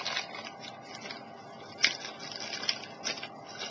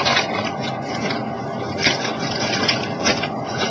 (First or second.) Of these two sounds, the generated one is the second